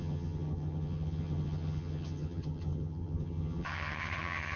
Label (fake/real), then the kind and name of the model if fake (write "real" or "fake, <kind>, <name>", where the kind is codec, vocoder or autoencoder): fake, vocoder, HiFi-GAN